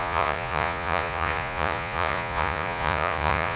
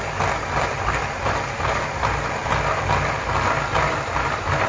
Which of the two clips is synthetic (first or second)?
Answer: first